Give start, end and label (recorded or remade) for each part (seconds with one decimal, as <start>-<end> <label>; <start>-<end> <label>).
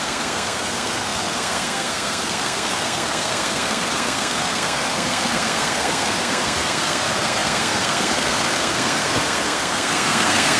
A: 0.0-10.6 remade